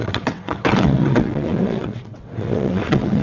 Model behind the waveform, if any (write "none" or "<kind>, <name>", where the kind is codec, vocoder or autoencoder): vocoder, WaveNeXt